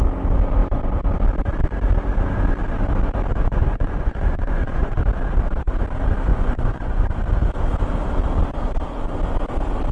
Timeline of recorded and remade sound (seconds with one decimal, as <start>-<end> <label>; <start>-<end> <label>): 0.0-3.3 recorded; 3.3-5.0 remade; 5.0-6.3 recorded; 6.3-7.1 remade; 7.1-9.9 recorded